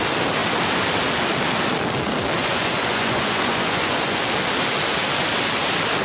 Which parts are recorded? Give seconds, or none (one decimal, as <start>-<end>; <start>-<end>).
0.0-2.4; 4.2-6.0